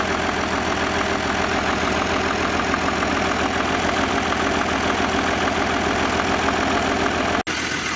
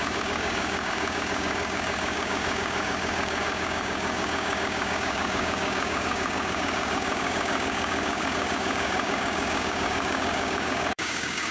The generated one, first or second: second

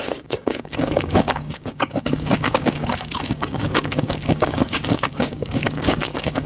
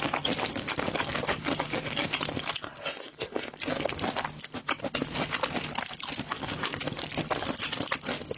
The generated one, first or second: first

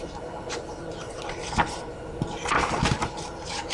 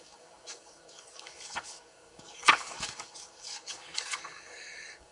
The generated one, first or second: second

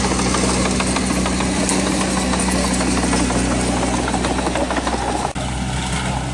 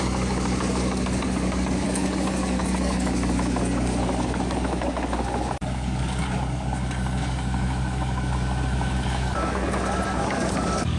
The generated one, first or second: second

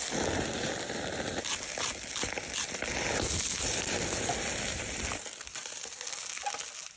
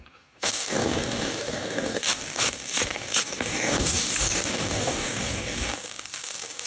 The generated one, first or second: second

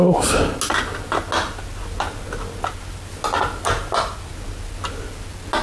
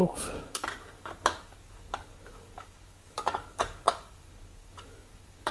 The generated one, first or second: second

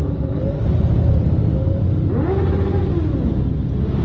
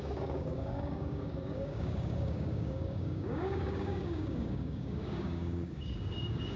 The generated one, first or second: second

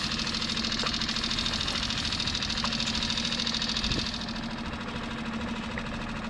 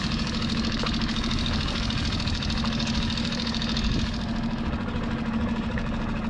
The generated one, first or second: second